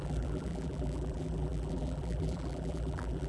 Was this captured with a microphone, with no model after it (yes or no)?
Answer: no